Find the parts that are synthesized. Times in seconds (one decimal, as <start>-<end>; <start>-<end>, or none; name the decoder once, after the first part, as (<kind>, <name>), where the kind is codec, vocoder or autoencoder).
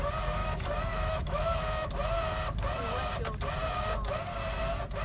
0.4-1.9 (autoencoder, DAC-VAE)